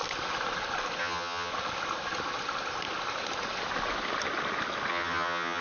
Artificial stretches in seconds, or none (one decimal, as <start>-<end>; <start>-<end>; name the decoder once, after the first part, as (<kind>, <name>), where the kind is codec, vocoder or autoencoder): 1.0-1.5 (vocoder, HiFi-GAN); 4.9-5.6